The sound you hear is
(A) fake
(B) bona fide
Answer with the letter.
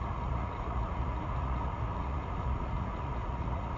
A